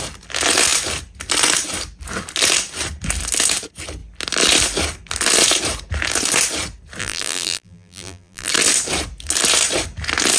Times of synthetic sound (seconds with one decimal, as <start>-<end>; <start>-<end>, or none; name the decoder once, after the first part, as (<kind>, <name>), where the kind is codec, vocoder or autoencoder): 7.0-8.5 (vocoder, BigVGAN v2)